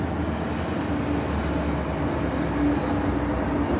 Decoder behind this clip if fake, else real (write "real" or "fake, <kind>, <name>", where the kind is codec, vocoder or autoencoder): real